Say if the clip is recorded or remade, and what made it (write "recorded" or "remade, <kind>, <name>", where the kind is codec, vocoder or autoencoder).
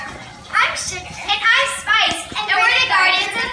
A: recorded